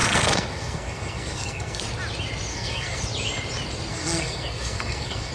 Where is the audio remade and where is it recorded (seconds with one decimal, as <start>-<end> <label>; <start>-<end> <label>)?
0.0-1.8 remade; 1.8-2.5 recorded; 2.5-3.0 remade; 3.0-3.9 recorded; 3.9-5.3 remade